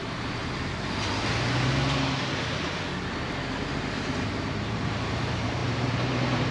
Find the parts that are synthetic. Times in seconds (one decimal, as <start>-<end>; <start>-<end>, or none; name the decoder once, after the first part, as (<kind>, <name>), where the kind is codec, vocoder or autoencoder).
0.0-0.4 (vocoder, BigVGAN v2); 4.3-6.5